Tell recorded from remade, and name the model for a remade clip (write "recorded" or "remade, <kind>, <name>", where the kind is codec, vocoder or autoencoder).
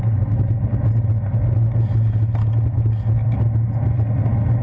recorded